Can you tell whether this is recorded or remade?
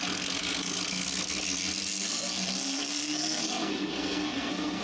remade